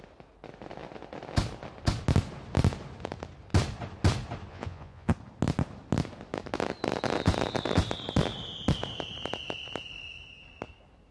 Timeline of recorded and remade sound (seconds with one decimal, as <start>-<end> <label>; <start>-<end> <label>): 0.0-4.5 recorded; 4.5-5.1 remade; 5.1-11.1 recorded